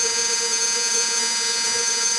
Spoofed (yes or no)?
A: yes